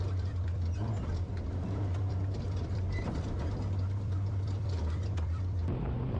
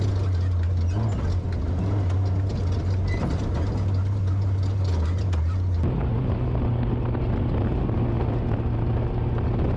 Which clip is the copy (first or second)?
first